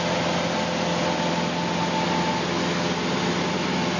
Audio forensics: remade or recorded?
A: recorded